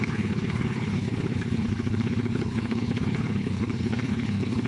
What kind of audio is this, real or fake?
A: fake